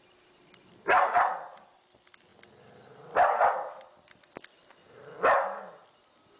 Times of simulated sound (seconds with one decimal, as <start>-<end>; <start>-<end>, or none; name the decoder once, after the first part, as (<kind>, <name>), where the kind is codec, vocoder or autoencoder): none